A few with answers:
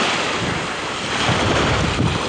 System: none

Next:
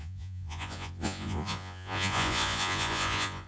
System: vocoder, Vocos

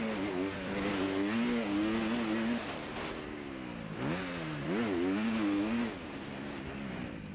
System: none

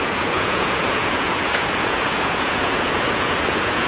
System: vocoder, Vocos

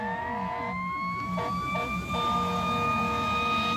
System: none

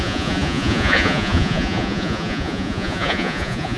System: vocoder, Vocos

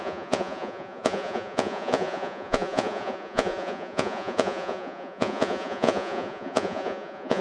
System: vocoder, Vocos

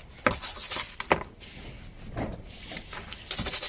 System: none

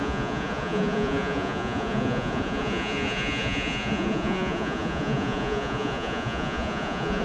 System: vocoder, Vocos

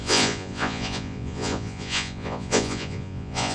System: vocoder, Vocos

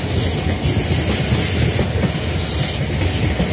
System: none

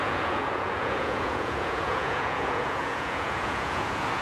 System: vocoder, Vocos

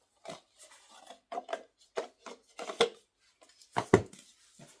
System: none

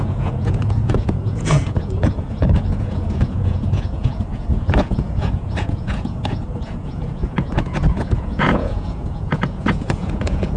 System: vocoder, Vocos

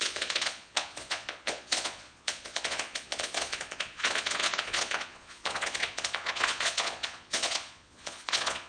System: vocoder, Vocos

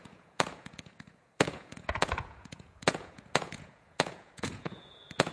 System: vocoder, Vocos